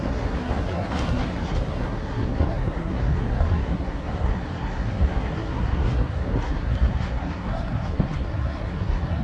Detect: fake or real fake